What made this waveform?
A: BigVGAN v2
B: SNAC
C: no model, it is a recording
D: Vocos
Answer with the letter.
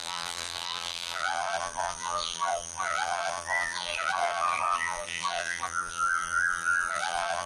A